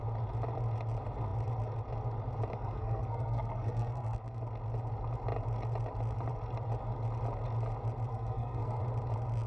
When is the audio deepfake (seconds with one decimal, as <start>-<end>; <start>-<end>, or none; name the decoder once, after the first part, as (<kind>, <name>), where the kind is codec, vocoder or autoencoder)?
2.5-4.4 (codec, SNAC); 8.1-8.8